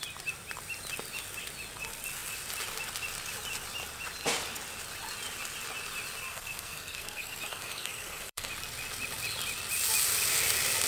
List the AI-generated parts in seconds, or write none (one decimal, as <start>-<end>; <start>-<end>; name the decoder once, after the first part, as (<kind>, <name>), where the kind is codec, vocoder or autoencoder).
6.3-8.5 (codec, SNAC)